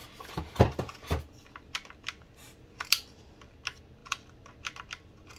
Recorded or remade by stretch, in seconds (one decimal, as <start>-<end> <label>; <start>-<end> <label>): 0.0-5.4 recorded

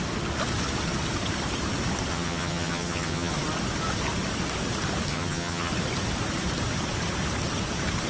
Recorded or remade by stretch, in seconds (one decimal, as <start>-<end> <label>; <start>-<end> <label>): 0.0-2.1 recorded; 2.1-3.3 remade; 3.3-5.1 recorded; 5.1-5.7 remade; 5.7-8.1 recorded

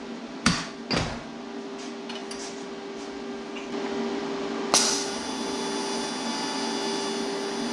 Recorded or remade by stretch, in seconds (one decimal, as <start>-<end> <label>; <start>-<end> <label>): 0.0-7.7 recorded

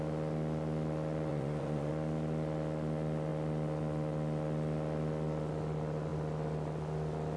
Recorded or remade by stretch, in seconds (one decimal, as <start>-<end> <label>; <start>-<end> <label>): 0.0-1.3 recorded; 1.3-1.9 remade; 1.9-7.4 recorded

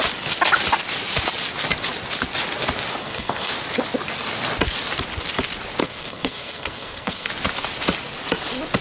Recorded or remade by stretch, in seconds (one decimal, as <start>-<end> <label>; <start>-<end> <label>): 0.0-3.0 recorded; 3.0-3.5 remade; 3.5-5.8 recorded; 5.8-7.3 remade; 7.3-8.8 recorded

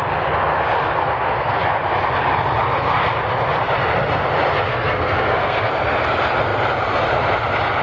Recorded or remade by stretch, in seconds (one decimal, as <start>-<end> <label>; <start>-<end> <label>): 0.0-1.0 recorded; 1.0-1.6 remade; 1.6-4.7 recorded; 4.7-5.7 remade; 5.7-7.8 recorded